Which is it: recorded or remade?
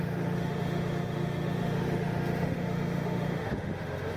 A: remade